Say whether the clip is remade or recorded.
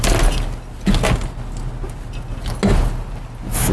recorded